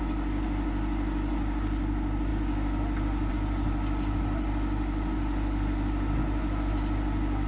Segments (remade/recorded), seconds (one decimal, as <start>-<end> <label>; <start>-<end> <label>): 0.0-7.5 recorded